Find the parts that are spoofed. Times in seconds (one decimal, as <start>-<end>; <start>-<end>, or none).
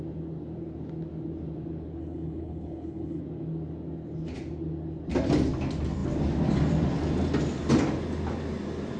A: 2.0-3.2